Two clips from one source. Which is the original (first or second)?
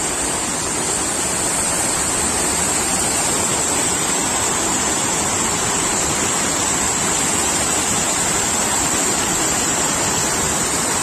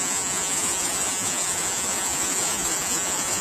first